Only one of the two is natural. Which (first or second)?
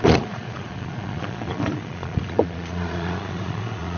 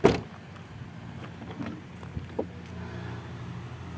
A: second